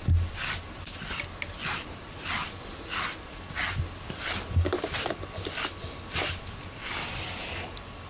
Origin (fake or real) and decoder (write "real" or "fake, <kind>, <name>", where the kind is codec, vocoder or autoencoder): real